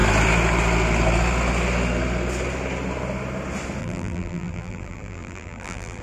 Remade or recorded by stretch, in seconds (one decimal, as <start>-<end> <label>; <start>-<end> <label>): 0.0-3.8 recorded; 3.8-6.0 remade